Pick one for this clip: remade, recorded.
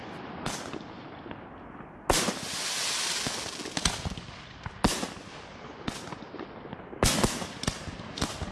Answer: recorded